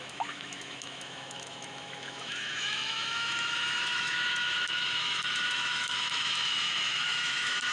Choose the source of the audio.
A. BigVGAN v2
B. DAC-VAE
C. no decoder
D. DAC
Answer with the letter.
B